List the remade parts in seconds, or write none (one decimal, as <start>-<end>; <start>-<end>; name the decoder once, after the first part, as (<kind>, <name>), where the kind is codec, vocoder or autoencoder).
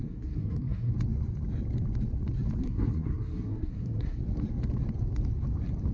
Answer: 0.0-0.9 (codec, SNAC); 2.6-4.2